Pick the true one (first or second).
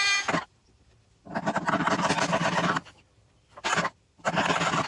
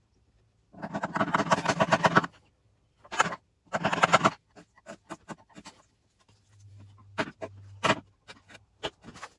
second